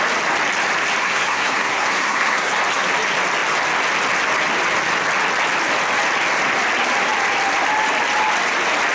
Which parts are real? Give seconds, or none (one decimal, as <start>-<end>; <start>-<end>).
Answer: 0.0-1.0; 2.5-8.9